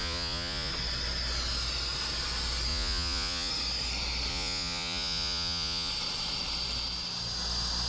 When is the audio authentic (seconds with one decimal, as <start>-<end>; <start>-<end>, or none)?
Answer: 0.7-2.7; 3.5-4.3; 5.9-7.9